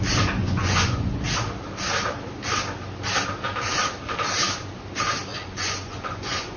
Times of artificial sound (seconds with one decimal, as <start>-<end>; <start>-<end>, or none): 0.4-1.2; 5.3-6.6